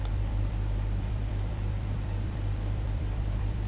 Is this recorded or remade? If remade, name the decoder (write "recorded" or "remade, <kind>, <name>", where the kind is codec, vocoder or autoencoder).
remade, vocoder, BigVGAN v2